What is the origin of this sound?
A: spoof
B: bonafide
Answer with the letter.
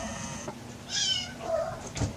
B